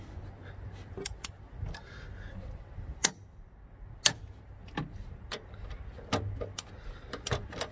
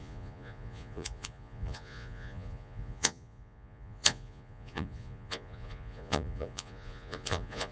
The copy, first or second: second